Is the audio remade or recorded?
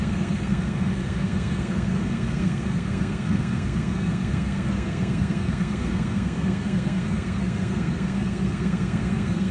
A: remade